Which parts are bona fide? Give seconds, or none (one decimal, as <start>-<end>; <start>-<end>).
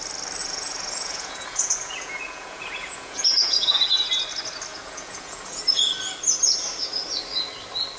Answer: 0.0-0.4; 4.1-4.7; 5.6-8.0